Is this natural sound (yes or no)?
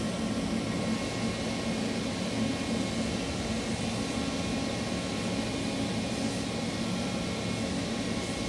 yes